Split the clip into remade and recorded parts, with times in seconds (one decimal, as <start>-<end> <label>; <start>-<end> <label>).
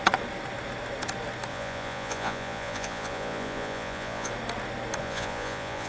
0.0-1.5 recorded; 1.5-4.3 remade; 4.3-5.0 recorded; 5.0-5.9 remade